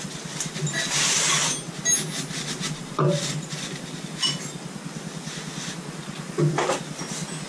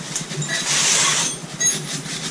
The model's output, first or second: second